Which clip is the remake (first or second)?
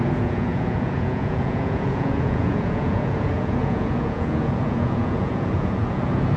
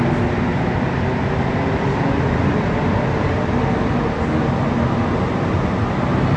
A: first